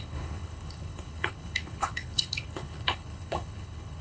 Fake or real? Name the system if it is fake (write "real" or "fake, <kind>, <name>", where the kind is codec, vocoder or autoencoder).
fake, codec, HILCodec